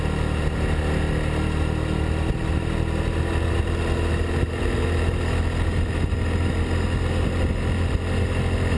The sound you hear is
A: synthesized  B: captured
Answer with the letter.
B